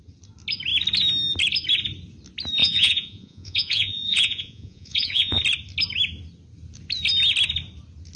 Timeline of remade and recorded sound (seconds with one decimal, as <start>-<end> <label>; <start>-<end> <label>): 0.0-2.6 recorded; 2.6-5.4 remade; 5.4-8.2 recorded